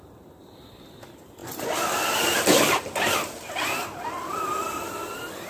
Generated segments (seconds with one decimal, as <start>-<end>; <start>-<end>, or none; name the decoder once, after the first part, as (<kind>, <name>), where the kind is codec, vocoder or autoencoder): 0.0-5.5 (vocoder, BigVGAN v2)